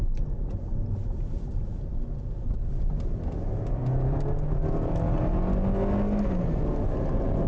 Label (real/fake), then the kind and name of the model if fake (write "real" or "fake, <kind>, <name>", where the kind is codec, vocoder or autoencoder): real